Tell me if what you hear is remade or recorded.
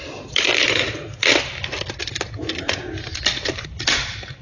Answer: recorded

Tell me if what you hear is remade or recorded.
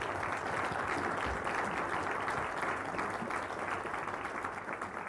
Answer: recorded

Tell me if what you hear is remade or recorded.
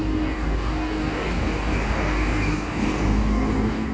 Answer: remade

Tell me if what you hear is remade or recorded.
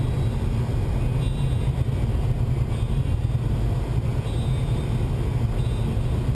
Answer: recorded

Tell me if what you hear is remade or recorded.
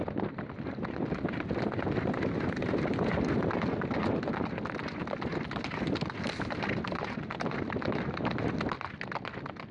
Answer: recorded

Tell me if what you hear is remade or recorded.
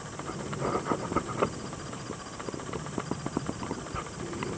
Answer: recorded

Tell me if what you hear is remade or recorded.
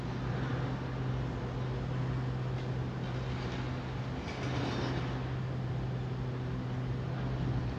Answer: recorded